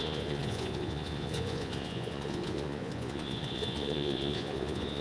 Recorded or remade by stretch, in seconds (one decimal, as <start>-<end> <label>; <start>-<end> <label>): 0.0-5.0 remade